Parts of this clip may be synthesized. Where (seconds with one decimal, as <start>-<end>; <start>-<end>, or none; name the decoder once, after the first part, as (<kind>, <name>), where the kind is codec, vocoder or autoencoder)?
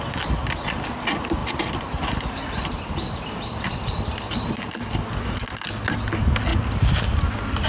1.4-4.5 (vocoder, BigVGAN v2); 6.5-7.3